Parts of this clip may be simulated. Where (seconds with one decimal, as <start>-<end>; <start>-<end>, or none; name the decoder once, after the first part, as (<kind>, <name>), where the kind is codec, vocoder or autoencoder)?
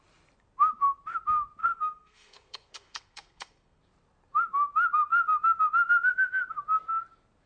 1.6-3.8 (codec, SNAC)